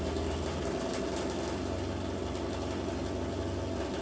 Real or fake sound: real